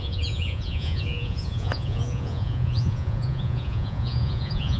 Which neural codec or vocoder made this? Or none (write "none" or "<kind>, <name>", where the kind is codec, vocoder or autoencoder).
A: vocoder, Vocos